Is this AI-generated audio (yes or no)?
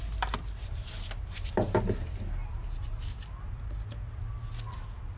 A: no